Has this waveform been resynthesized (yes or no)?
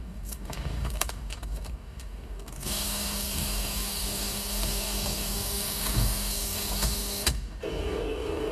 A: yes